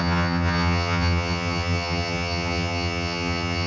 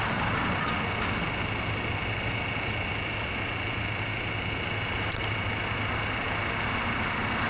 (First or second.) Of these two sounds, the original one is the second